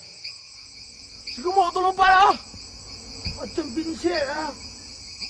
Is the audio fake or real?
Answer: fake